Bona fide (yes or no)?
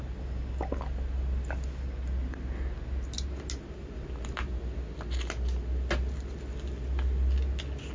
yes